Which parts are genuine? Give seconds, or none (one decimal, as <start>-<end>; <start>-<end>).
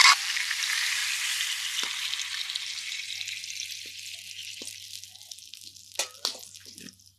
0.6-7.2